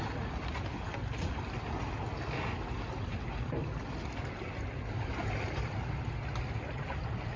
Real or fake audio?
real